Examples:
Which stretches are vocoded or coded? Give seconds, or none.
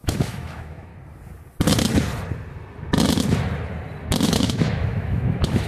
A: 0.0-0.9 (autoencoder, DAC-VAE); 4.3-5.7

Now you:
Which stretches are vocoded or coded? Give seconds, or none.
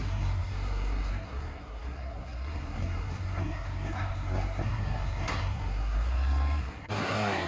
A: 0.0-7.5 (codec, SNAC)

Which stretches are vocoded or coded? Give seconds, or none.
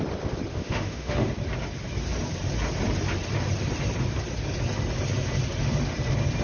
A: 0.5-1.3 (autoencoder, DAC-VAE)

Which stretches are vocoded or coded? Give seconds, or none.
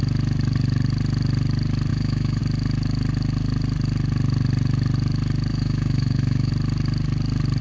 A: 1.9-2.4 (autoencoder, DAC-VAE); 5.5-6.5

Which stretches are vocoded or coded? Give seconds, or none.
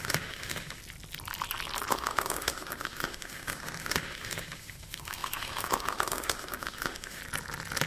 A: 0.0-0.8 (autoencoder, DAC-VAE); 1.9-7.2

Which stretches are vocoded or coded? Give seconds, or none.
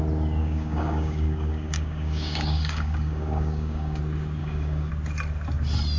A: 0.4-4.0 (codec, DAC); 4.4-4.9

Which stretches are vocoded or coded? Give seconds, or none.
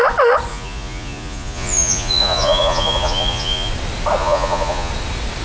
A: 0.5-3.7 (vocoder, Vocos); 4.2-4.9